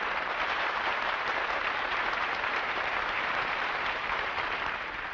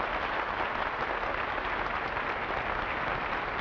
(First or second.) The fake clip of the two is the first